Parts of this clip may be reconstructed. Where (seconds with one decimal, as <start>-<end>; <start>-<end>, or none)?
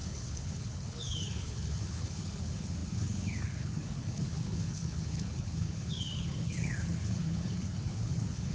0.0-8.5